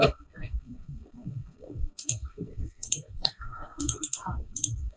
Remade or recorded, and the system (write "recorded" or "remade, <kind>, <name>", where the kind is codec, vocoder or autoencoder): remade, codec, SNAC